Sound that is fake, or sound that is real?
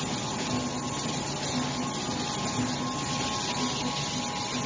real